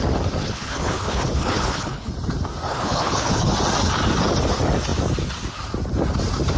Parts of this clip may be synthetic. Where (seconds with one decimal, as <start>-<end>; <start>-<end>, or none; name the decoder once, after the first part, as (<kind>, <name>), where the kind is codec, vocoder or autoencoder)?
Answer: 0.4-2.1 (codec, HILCodec); 2.7-3.5